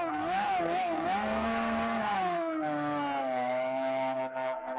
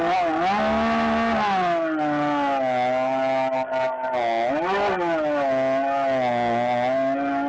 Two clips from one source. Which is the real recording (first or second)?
second